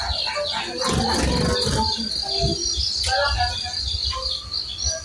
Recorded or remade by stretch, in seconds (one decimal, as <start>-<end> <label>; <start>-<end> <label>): 0.0-5.0 recorded